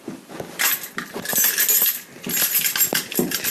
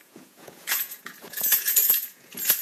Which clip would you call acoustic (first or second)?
first